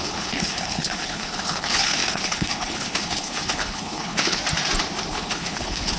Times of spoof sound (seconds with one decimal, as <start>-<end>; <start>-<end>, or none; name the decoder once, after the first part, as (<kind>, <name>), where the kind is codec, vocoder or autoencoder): 0.0-4.4 (codec, HILCodec); 5.1-6.0